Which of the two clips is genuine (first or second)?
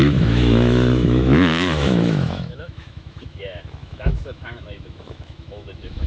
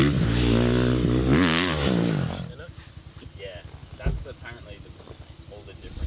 second